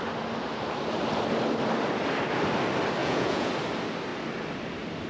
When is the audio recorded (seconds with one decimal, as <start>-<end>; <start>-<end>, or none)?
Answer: 0.0-3.0; 3.5-5.1